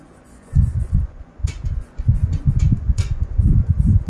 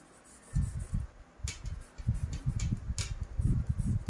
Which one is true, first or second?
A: second